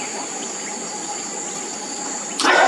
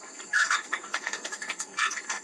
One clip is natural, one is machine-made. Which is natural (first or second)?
first